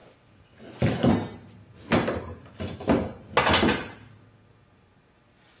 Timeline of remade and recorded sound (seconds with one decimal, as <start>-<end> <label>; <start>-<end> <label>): 0.0-5.6 recorded